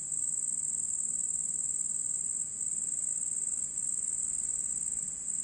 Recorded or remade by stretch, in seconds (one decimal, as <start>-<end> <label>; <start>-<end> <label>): 0.0-5.4 recorded